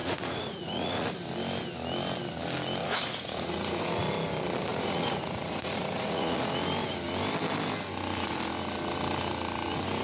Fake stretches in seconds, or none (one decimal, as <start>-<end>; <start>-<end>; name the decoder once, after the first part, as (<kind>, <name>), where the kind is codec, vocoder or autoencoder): 0.0-1.1 (vocoder, Vocos); 2.8-4.1; 4.7-6.4